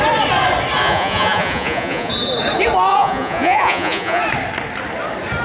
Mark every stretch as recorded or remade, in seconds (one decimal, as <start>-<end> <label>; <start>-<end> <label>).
0.0-0.8 recorded; 0.8-2.1 remade; 2.1-2.9 recorded; 2.9-4.2 remade; 4.2-5.4 recorded